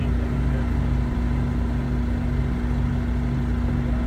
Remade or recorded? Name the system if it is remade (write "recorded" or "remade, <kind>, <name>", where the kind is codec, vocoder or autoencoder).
recorded